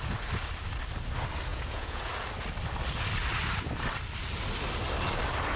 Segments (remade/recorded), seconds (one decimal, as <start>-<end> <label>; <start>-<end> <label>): 0.0-1.5 recorded; 1.5-2.1 remade; 2.1-5.6 recorded